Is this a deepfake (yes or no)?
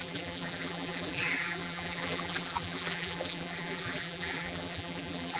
yes